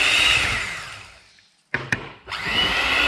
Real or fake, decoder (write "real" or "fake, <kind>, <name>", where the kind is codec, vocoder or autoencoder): fake, vocoder, BigVGAN v2